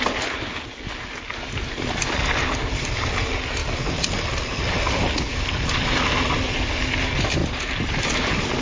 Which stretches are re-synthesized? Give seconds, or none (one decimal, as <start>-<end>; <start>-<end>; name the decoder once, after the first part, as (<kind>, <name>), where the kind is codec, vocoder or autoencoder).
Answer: none